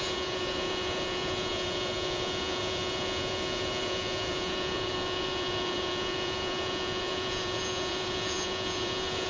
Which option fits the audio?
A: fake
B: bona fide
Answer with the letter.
A